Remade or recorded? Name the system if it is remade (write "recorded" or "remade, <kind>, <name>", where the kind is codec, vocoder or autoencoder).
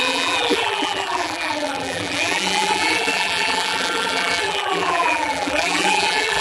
remade, vocoder, BigVGAN v2